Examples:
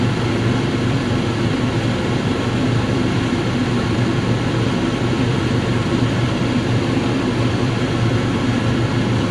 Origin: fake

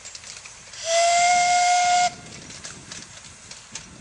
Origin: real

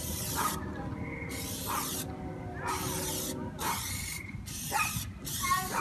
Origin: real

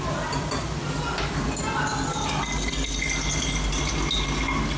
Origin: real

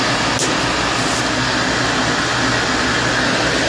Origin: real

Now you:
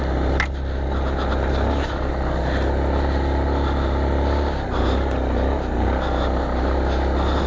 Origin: real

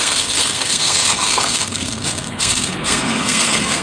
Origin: fake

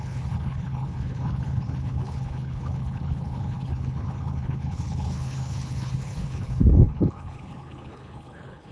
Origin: fake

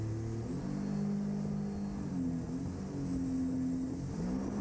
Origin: real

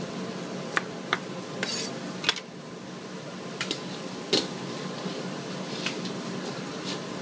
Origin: real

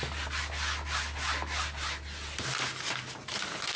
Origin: real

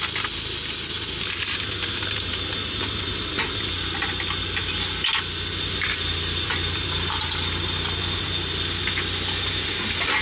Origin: real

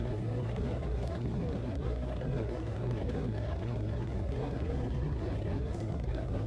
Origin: fake